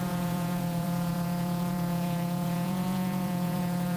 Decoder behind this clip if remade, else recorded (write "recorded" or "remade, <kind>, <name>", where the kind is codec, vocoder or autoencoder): remade, vocoder, Vocos